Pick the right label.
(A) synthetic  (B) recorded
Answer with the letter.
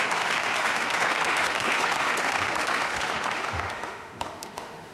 A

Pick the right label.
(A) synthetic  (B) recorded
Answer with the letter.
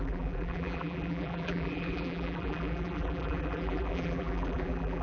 A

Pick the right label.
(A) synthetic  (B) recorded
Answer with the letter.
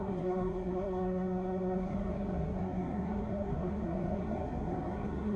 A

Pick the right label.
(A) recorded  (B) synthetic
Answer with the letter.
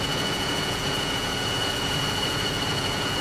B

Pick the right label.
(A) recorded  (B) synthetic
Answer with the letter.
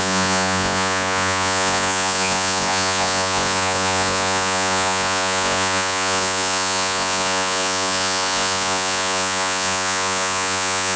B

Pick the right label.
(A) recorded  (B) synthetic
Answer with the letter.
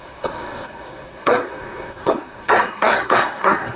B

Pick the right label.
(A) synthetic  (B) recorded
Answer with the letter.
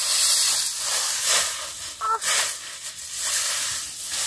B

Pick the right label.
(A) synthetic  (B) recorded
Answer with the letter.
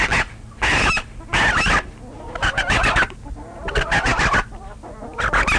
B